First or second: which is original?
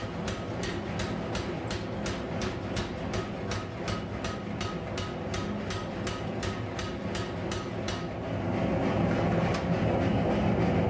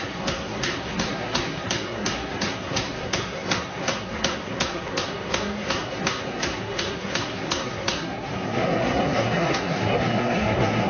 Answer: first